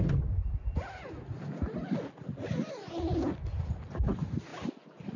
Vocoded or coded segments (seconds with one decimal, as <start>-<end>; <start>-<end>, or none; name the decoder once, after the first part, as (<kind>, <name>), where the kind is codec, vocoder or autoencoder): none